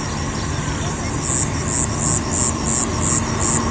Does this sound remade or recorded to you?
recorded